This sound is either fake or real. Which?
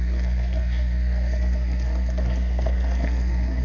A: fake